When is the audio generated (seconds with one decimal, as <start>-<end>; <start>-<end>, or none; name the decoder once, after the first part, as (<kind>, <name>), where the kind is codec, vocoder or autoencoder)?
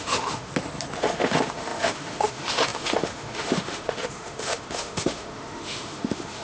0.0-0.5 (autoencoder, DAC-VAE); 1.0-6.4